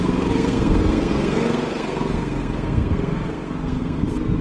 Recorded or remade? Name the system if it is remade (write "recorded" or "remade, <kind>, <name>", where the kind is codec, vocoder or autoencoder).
remade, codec, SNAC